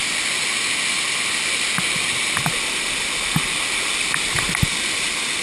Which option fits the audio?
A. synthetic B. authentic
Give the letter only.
B